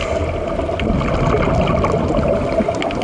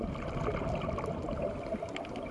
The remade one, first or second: second